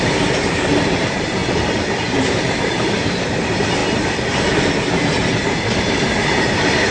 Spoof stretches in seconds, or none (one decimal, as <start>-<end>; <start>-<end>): 0.0-1.4; 2.1-3.8; 4.8-5.2; 5.7-6.9